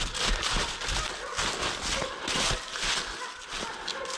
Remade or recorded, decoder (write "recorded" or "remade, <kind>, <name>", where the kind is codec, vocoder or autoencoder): recorded